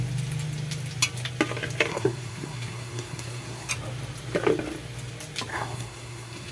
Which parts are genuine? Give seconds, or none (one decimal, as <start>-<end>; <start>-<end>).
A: 0.0-1.9; 3.7-5.5